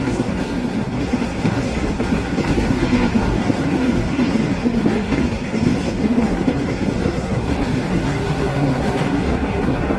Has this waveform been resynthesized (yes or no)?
yes